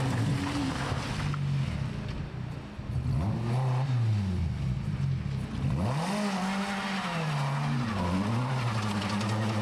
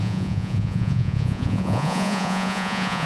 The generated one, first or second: second